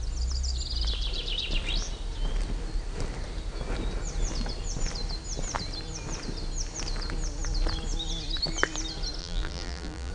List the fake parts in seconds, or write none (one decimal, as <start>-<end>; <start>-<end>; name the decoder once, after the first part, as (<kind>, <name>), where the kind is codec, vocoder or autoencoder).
9.2-10.1 (vocoder, BigVGAN v2)